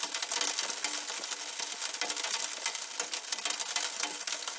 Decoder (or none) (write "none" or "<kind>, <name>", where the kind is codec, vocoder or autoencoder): none